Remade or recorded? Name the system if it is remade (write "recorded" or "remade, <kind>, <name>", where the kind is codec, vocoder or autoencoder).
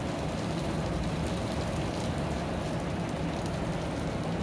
recorded